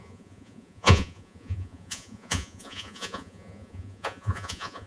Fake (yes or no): yes